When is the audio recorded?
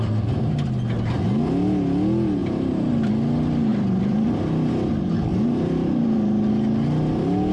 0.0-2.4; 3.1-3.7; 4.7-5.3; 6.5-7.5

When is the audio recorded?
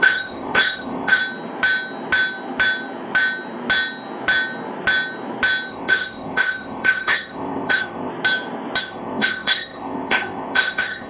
1.2-5.7; 8.1-8.8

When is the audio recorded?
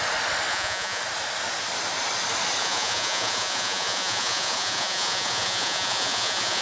0.0-0.5; 1.0-2.6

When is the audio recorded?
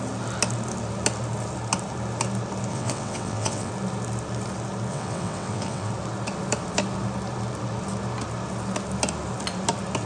0.0-2.7; 3.7-4.9; 5.9-10.1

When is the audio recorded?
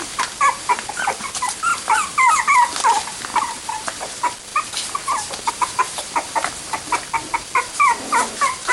0.0-1.7; 2.3-3.3; 4.0-8.7